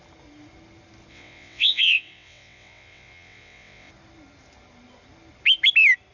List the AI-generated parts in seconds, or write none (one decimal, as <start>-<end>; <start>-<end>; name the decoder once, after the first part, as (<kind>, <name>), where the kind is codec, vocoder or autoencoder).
1.1-3.9 (vocoder, WaveNeXt)